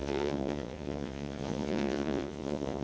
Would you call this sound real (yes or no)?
no